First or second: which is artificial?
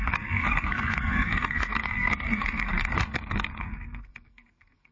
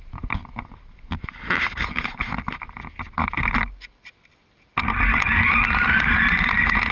first